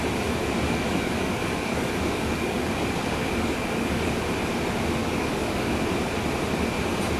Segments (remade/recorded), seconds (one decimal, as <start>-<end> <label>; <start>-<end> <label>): 0.0-0.4 recorded; 0.4-4.1 remade; 4.1-5.0 recorded; 5.0-5.7 remade; 5.7-7.2 recorded